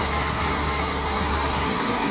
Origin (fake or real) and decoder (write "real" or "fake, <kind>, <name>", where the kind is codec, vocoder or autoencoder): fake, codec, SNAC